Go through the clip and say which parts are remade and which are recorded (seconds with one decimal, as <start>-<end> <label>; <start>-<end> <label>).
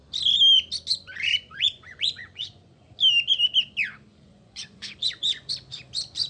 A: 0.0-0.9 recorded; 0.9-2.9 remade; 2.9-4.1 recorded; 4.1-5.5 remade; 5.5-6.3 recorded